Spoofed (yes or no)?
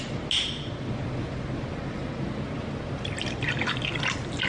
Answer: no